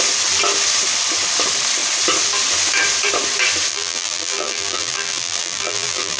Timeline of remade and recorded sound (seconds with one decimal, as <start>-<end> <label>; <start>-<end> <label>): 0.0-3.7 recorded; 3.7-6.2 remade